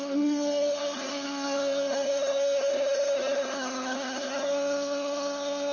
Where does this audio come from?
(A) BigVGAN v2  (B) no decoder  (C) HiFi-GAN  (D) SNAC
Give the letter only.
D